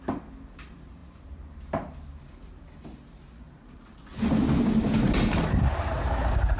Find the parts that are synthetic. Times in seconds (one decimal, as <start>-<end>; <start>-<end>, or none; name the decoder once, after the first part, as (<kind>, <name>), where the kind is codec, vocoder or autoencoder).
none